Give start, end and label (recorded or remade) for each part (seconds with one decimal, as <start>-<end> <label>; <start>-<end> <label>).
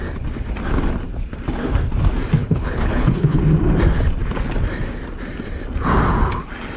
0.0-2.4 recorded; 2.4-3.4 remade; 3.4-6.8 recorded